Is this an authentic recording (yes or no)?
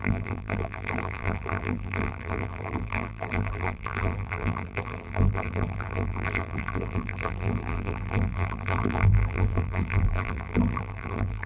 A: no